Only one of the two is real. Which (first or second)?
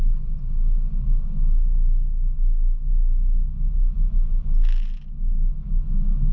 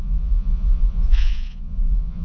first